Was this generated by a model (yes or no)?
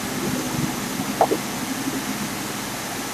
no